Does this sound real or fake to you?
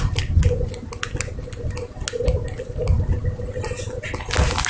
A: real